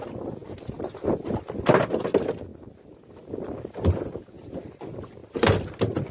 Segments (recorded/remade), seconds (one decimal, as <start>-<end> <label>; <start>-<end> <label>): 0.0-6.1 recorded